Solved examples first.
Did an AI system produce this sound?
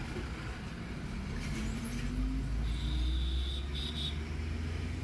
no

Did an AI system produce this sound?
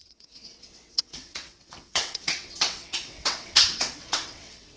yes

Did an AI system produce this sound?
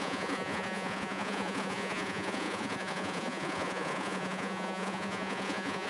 yes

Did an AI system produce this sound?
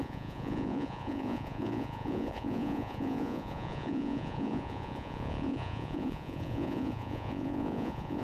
yes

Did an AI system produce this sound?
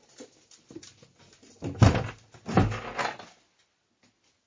no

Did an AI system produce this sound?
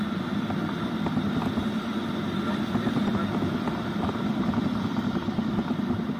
yes